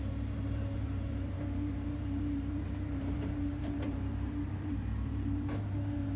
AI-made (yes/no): yes